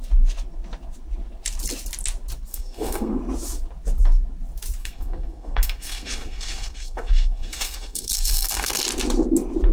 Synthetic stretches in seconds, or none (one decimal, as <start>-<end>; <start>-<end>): 2.5-3.2; 4.8-8.8

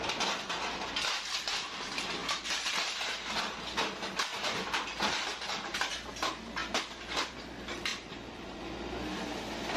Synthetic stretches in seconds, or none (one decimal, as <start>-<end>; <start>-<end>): 2.2-3.5; 4.3-5.9; 7.9-8.6

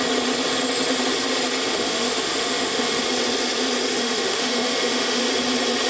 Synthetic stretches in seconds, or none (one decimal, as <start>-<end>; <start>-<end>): 1.7-3.0; 3.9-5.2

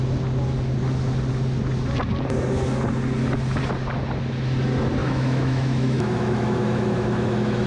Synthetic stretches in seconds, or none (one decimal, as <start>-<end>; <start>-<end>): 5.0-7.7

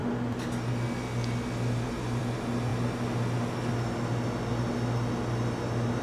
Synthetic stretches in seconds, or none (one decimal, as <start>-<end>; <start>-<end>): none